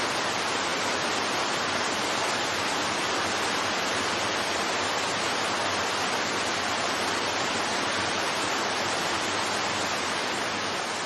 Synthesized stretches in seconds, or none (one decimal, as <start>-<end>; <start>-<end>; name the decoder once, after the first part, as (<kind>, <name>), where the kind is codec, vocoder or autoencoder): 3.9-4.7 (vocoder, BigVGAN v2); 6.5-9.4